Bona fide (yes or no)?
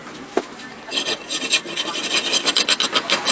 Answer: yes